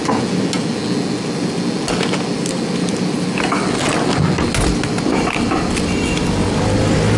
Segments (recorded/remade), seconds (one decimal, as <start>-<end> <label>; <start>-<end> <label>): 0.0-7.2 recorded